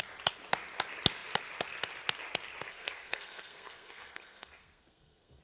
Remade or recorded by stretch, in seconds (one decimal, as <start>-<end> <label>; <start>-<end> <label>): 0.0-2.7 recorded; 2.7-5.4 remade